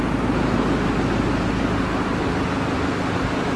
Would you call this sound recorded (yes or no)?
yes